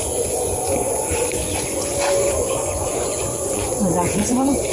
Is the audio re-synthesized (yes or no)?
yes